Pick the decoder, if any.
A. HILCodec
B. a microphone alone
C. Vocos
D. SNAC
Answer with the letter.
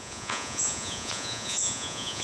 C